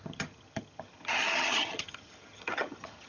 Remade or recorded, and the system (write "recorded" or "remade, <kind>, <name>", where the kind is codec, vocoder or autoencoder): remade, vocoder, HiFi-GAN